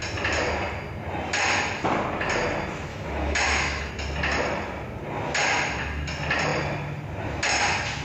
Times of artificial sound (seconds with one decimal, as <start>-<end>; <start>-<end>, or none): 2.9-3.9